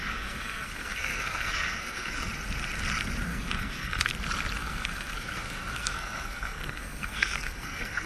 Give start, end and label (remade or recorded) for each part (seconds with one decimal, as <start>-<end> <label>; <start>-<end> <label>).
0.0-2.3 remade; 2.3-3.3 recorded; 3.3-4.1 remade; 4.1-4.6 recorded; 4.6-8.1 remade